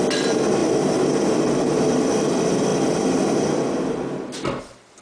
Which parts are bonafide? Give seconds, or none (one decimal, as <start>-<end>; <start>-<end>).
0.0-5.0